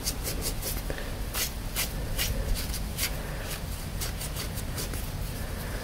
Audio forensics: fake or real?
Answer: real